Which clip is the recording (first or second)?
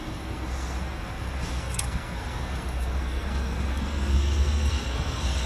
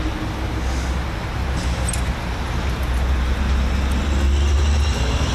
second